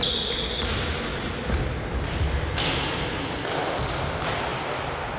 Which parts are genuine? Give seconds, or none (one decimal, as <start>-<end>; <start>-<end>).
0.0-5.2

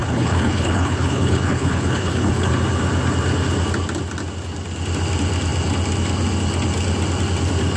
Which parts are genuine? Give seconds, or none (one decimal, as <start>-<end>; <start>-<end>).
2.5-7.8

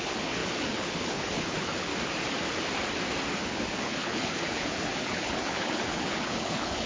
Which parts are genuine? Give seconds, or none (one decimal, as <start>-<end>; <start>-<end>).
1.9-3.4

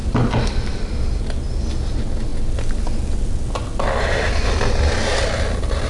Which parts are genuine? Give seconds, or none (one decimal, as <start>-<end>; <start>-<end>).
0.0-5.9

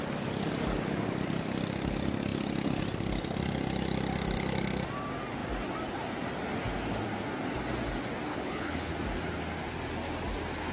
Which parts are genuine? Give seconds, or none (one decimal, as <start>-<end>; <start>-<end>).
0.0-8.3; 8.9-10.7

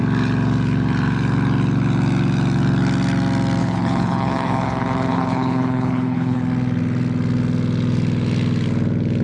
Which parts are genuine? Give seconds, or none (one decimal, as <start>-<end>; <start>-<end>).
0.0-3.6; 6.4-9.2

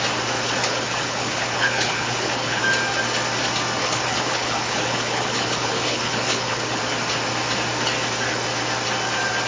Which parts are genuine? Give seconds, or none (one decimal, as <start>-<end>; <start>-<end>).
0.0-0.6; 2.6-3.8; 6.8-9.5

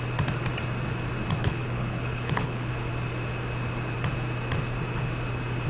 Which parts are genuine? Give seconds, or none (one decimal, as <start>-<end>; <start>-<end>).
0.0-1.4; 2.7-5.7